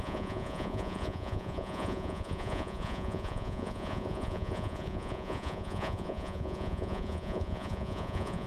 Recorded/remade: remade